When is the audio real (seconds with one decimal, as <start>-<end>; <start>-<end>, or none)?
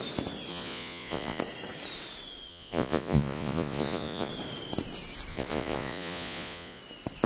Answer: 0.0-0.5; 1.4-2.5; 4.3-5.3; 6.8-7.3